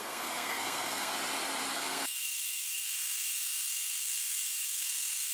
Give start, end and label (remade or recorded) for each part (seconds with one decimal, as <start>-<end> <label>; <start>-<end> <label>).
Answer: 0.0-1.1 remade; 1.1-1.7 recorded; 1.7-5.3 remade